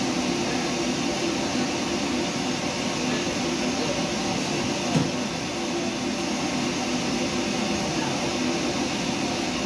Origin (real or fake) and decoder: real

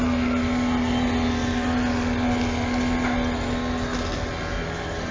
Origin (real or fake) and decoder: real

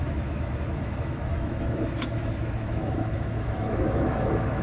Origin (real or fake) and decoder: fake, autoencoder, DAC-VAE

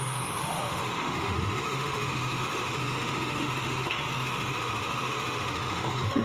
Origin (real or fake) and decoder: fake, autoencoder, DAC-VAE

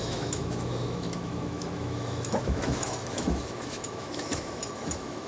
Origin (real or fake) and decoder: fake, autoencoder, DAC-VAE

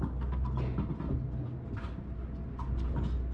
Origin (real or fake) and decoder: real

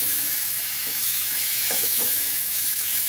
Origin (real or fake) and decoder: fake, autoencoder, DAC-VAE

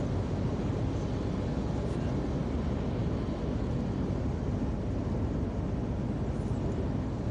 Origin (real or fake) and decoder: real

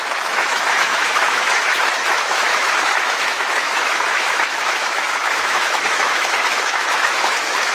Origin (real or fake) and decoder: fake, autoencoder, DAC-VAE